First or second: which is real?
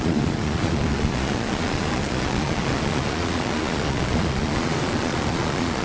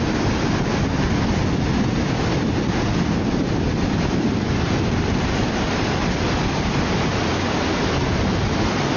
second